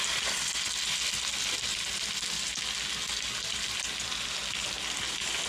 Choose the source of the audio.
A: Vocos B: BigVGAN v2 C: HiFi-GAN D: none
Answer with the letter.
D